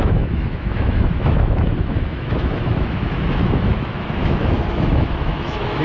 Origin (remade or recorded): remade